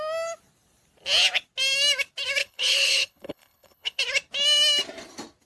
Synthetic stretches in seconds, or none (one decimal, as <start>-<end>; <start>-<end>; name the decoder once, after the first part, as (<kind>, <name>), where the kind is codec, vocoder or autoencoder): 2.4-4.0 (codec, HILCodec)